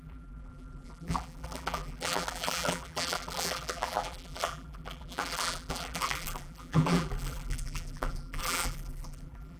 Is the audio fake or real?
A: fake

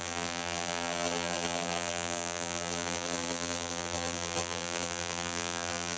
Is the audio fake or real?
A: fake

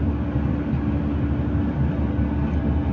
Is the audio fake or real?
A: real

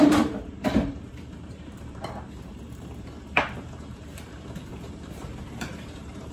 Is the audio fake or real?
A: fake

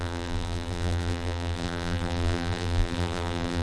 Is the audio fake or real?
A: fake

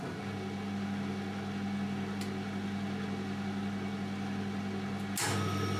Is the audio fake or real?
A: real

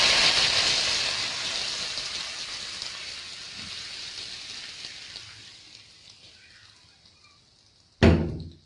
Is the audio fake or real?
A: real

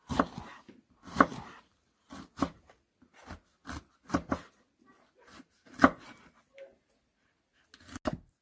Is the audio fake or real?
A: real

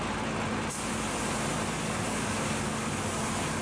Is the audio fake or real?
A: real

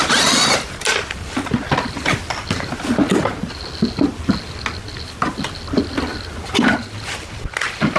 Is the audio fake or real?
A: real